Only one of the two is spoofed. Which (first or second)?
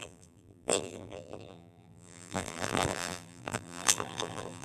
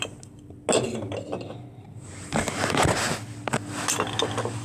first